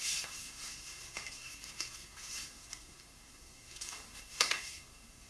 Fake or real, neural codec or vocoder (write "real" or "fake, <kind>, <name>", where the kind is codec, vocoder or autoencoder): fake, codec, SNAC